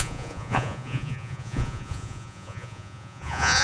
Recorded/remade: remade